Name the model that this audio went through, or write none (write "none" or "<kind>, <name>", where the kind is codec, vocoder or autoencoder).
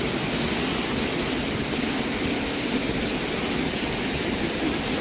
none